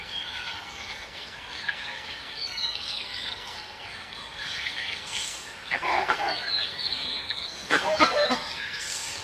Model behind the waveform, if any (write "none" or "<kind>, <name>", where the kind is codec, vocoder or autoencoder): codec, SNAC